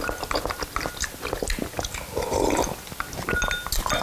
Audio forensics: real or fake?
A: real